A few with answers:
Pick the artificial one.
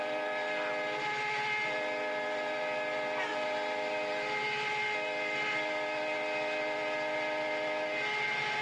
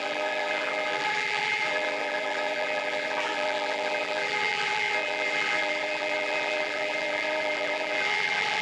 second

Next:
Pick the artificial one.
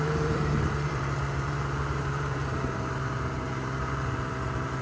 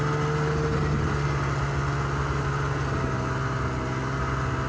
first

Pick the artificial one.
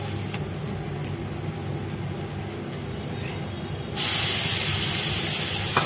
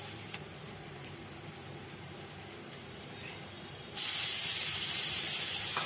second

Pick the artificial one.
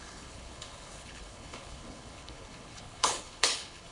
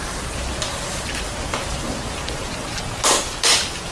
first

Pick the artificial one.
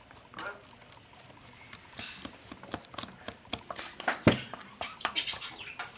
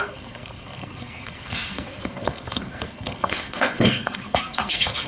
second